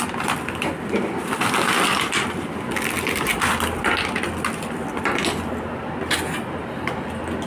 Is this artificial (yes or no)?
no